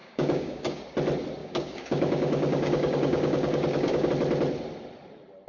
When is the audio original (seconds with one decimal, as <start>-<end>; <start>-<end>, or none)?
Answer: 0.8-1.4; 4.1-5.5